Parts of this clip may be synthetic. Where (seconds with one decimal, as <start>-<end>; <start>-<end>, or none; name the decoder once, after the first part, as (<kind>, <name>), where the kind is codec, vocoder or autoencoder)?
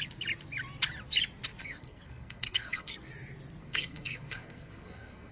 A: 1.6-3.1 (codec, SNAC); 3.6-5.3